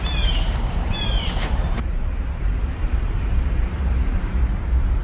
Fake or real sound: fake